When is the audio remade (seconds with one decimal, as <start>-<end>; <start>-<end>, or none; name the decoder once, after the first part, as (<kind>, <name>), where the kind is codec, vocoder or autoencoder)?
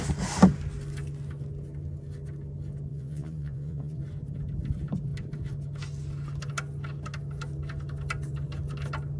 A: 2.9-4.0 (vocoder, Vocos)